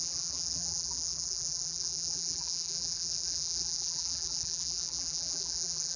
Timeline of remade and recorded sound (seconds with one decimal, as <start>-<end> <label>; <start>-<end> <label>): 0.0-6.0 remade